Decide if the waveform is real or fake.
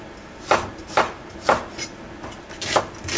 real